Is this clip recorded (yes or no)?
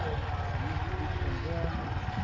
yes